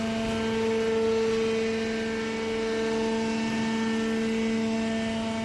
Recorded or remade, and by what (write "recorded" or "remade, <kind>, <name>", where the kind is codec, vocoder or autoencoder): recorded